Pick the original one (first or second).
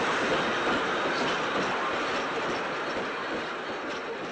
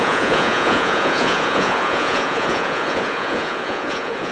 first